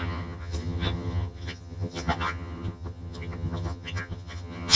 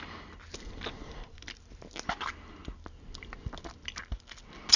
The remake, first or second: first